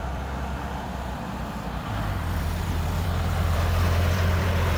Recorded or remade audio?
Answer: remade